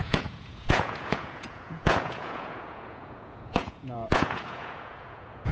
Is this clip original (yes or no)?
no